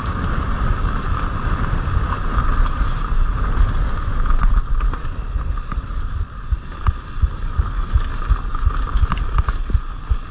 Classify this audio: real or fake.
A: real